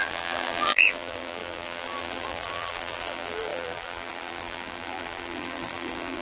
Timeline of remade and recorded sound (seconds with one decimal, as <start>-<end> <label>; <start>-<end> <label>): 0.0-6.2 remade